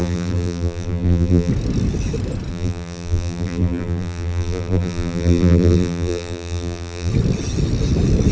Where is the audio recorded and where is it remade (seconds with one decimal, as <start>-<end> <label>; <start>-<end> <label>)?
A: 0.0-1.5 remade; 1.5-2.5 recorded; 2.5-7.1 remade; 7.1-8.3 recorded